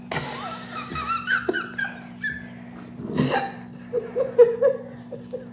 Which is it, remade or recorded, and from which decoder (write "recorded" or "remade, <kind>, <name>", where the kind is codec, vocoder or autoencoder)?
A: recorded